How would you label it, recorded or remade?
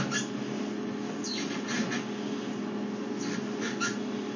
recorded